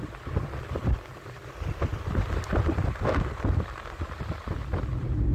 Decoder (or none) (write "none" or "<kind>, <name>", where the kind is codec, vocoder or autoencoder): none